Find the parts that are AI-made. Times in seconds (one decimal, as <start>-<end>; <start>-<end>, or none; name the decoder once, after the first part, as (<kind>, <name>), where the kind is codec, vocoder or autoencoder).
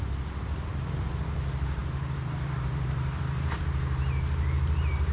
1.8-3.6 (vocoder, BigVGAN v2)